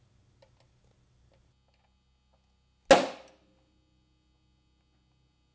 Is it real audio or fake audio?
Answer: real